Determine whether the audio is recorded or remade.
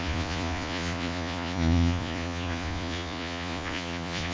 remade